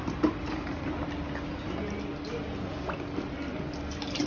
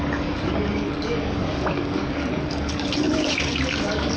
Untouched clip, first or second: first